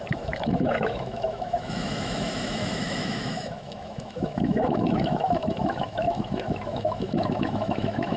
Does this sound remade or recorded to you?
remade